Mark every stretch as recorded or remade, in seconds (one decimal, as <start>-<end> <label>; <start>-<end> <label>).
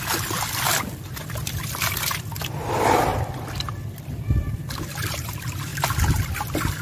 0.0-3.1 remade; 3.1-3.9 recorded; 3.9-5.7 remade; 5.7-6.8 recorded